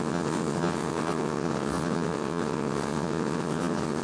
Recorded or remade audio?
remade